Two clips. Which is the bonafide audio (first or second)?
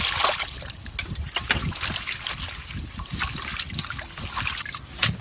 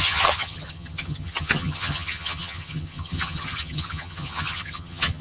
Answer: first